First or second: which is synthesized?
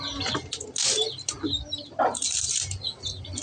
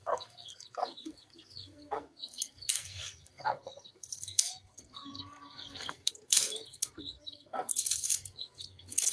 second